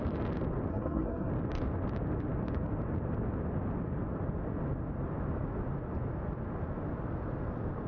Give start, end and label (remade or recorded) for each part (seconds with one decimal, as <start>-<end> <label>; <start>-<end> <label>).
0.0-0.7 recorded; 0.7-1.3 remade; 1.3-7.9 recorded